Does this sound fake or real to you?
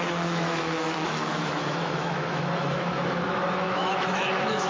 fake